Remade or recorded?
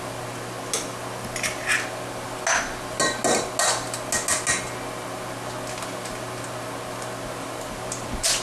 recorded